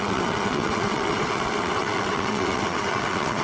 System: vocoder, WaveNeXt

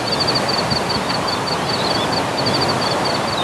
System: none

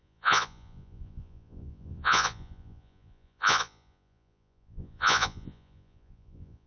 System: vocoder, Vocos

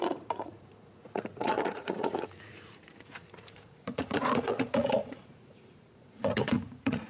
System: vocoder, Vocos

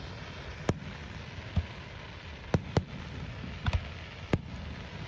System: none